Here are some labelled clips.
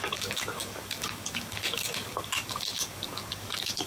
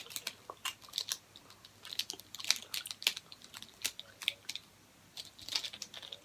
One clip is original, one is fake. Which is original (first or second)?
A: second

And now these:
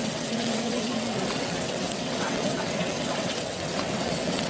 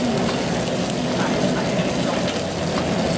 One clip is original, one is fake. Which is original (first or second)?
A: second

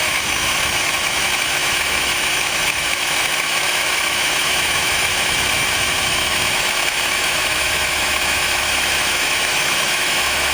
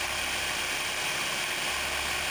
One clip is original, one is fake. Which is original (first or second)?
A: second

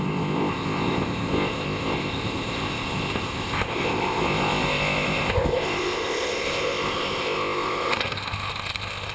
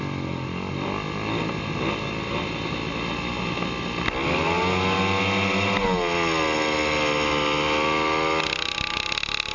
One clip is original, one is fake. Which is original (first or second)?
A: second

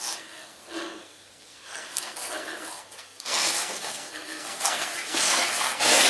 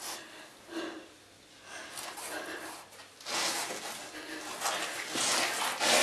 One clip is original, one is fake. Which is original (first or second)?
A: second